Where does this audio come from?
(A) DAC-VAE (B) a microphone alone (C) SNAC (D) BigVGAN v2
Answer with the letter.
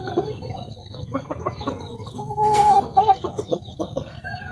C